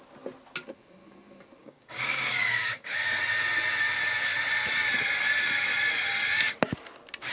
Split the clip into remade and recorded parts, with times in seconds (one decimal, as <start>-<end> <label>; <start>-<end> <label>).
0.0-1.6 recorded; 1.6-3.2 remade; 3.2-7.3 recorded